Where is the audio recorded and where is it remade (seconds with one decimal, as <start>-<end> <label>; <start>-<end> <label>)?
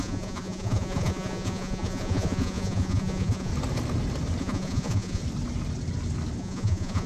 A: 0.0-3.5 remade; 3.5-4.4 recorded; 4.4-5.2 remade; 5.2-6.4 recorded; 6.4-7.1 remade